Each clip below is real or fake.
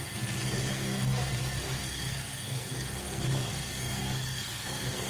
fake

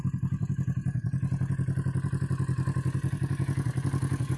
real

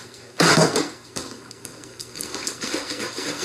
fake